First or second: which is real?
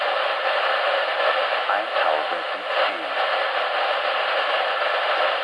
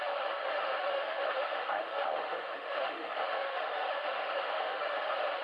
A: first